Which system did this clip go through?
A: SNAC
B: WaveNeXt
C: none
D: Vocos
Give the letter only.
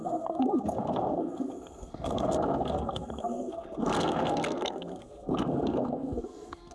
A